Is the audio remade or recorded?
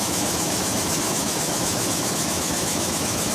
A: remade